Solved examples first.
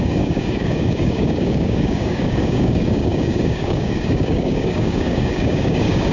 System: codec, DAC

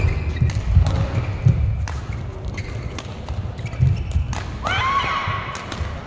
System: none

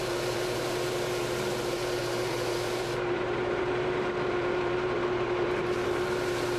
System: vocoder, BigVGAN v2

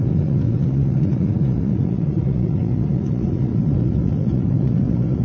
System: vocoder, Vocos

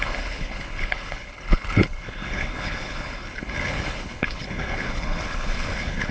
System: codec, HILCodec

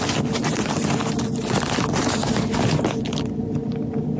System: none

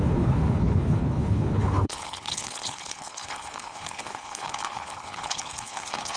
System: codec, HILCodec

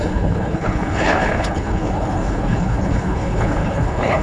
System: codec, HILCodec